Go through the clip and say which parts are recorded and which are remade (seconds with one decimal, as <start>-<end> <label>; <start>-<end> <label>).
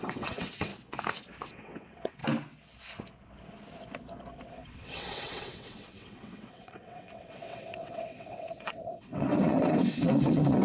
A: 0.0-0.7 remade; 0.7-1.5 recorded; 1.5-2.2 remade; 2.2-4.5 recorded; 4.5-10.6 remade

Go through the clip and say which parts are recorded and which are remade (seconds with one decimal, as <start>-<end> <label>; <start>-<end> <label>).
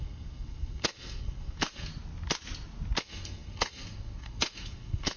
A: 0.0-1.9 remade; 1.9-3.0 recorded; 3.0-5.2 remade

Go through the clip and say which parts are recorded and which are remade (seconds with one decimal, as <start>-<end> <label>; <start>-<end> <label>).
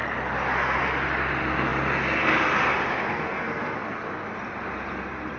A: 0.0-3.1 recorded; 3.1-4.1 remade; 4.1-5.4 recorded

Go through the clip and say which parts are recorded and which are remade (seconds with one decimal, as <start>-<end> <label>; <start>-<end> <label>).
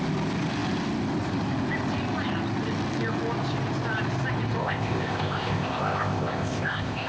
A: 0.0-4.6 recorded; 4.6-7.1 remade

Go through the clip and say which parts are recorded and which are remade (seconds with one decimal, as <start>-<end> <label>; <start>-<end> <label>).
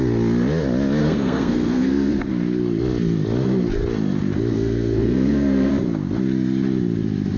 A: 0.0-1.0 recorded; 1.0-2.3 remade; 2.3-4.5 recorded; 4.5-5.7 remade; 5.7-7.4 recorded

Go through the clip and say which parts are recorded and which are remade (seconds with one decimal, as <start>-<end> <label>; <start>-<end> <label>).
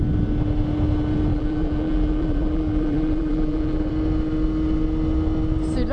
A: 0.0-1.3 recorded; 1.3-3.9 remade; 3.9-5.9 recorded